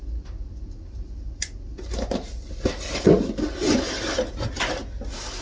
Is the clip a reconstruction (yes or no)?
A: no